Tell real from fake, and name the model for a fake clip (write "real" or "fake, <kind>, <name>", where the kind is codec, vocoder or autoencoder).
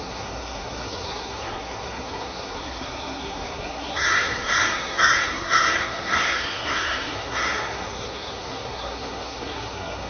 fake, codec, SNAC